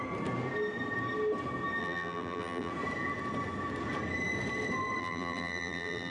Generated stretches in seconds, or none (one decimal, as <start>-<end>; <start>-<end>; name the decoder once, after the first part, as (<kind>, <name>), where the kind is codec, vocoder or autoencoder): 1.8-2.7 (vocoder, BigVGAN v2); 5.0-6.1